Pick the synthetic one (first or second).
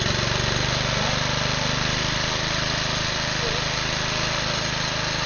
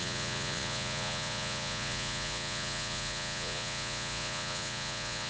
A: second